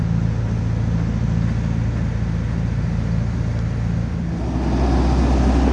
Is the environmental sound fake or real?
real